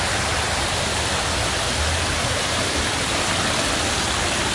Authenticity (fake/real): real